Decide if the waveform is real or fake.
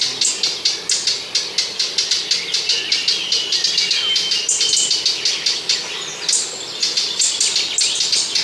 real